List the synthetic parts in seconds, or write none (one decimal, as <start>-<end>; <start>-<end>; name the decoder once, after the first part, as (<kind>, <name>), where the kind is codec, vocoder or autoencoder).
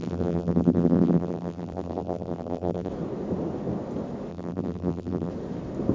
0.0-2.9 (vocoder, BigVGAN v2); 4.3-5.3